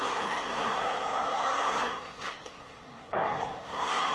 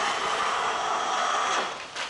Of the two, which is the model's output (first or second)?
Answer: first